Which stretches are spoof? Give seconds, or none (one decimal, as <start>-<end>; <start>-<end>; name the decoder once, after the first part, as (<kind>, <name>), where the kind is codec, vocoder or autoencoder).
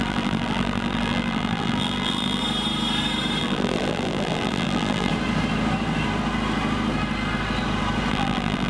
0.0-2.4 (vocoder, BigVGAN v2); 3.4-5.1; 8.1-8.7